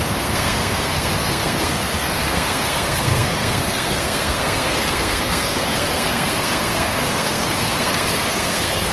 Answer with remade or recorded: remade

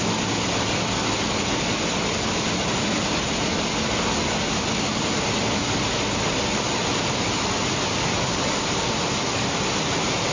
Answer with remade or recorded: recorded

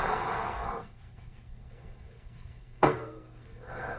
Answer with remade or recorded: remade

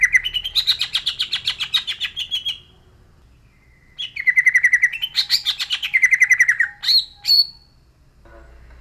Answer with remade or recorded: recorded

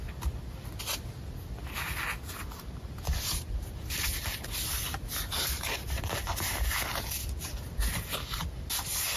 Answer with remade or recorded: recorded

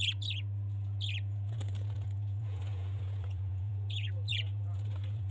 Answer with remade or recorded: remade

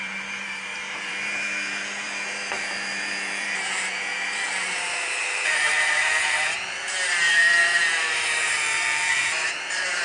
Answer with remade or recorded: remade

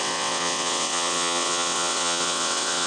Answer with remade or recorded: remade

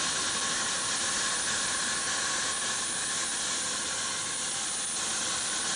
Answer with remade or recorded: recorded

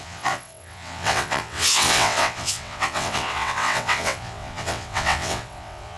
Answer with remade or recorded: remade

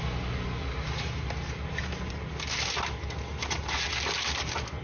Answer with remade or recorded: recorded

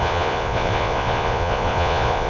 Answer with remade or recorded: remade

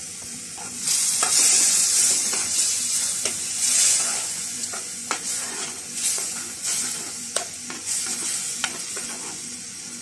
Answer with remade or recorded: remade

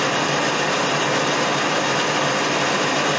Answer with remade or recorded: recorded